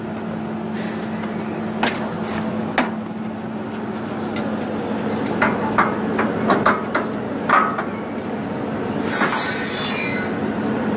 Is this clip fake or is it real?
real